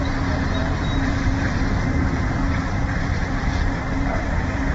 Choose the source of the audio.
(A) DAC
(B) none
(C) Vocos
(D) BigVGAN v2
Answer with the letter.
D